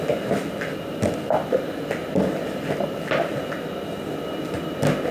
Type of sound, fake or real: real